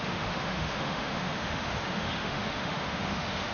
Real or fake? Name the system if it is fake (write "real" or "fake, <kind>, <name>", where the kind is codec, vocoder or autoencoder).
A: fake, autoencoder, DAC-VAE